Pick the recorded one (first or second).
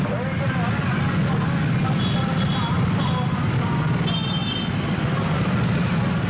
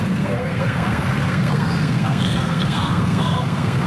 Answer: first